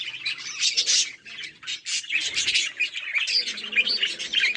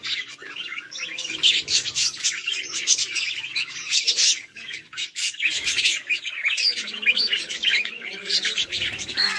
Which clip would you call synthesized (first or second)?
second